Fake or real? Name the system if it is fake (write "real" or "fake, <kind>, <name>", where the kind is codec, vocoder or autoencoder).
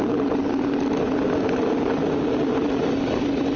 real